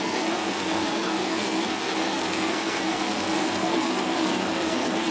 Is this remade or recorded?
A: remade